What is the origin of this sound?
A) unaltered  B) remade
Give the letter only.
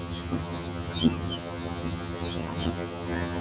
B